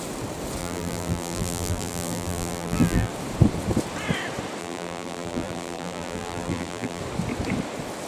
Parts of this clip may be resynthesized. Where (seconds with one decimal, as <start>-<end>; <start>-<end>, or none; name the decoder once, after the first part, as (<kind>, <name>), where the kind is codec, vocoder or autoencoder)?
0.6-3.1 (vocoder, BigVGAN v2); 4.6-7.0